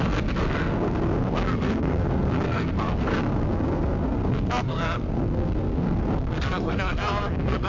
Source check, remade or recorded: remade